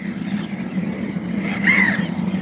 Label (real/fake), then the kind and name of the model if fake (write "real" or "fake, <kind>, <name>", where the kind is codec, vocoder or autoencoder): fake, vocoder, BigVGAN v2